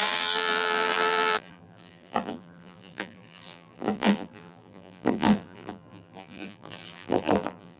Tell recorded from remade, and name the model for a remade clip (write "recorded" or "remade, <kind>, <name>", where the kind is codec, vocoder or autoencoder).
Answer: remade, vocoder, BigVGAN v2